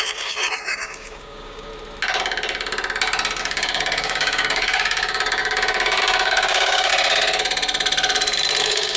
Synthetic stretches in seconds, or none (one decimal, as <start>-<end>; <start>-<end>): 0.0-1.7; 3.4-6.9; 8.6-9.0